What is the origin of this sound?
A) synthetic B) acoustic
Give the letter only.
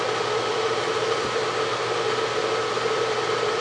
B